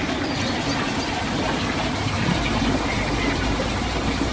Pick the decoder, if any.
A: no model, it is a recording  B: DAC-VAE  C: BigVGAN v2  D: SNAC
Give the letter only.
A